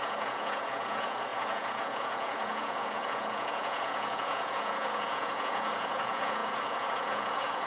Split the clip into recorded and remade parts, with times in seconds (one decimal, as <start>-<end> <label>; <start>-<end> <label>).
0.0-7.7 remade